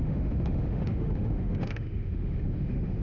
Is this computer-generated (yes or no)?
yes